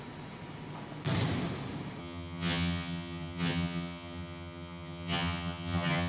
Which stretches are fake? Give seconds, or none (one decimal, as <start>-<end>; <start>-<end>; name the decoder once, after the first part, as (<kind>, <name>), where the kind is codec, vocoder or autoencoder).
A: 2.0-6.1 (vocoder, HiFi-GAN)